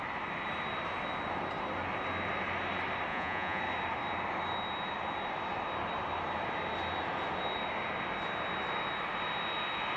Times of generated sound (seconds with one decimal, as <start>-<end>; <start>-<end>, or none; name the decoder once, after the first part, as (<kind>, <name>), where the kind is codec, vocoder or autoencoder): 3.1-3.6 (vocoder, Vocos)